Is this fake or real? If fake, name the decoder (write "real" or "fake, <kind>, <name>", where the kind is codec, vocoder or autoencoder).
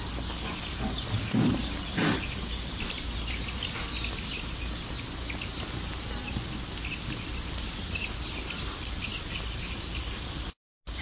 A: real